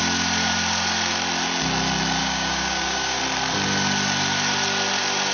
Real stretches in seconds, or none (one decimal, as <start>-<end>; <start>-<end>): 0.0-2.2; 3.2-5.3